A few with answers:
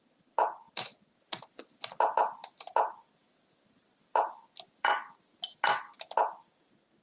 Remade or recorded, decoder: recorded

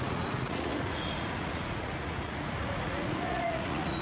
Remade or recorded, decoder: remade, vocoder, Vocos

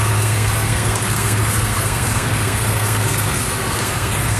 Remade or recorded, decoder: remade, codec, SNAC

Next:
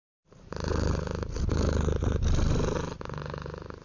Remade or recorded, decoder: recorded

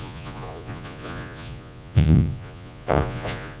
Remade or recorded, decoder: remade, vocoder, Vocos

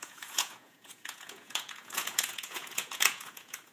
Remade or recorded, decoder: remade, vocoder, Vocos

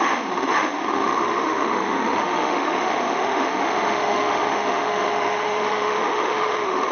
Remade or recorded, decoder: remade, autoencoder, DAC-VAE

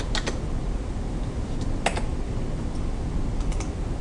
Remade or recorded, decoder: recorded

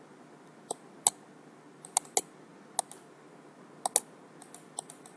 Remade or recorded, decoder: recorded